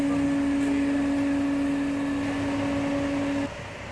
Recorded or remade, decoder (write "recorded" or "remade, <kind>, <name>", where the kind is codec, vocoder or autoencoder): recorded